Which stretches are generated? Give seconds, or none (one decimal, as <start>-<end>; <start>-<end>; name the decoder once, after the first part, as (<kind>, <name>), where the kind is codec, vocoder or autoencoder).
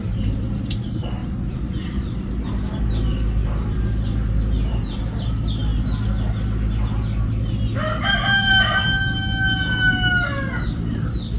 1.2-2.5 (vocoder, BigVGAN v2); 3.1-3.8